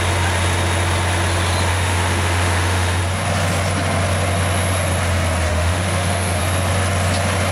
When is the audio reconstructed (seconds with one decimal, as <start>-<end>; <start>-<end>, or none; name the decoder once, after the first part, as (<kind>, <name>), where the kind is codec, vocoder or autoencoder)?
1.7-3.0 (autoencoder, DAC-VAE); 5.5-6.4